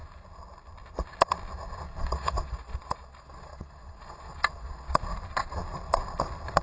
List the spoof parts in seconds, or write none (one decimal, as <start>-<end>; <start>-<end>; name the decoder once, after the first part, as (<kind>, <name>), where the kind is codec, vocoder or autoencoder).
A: 2.0-5.0 (vocoder, Vocos)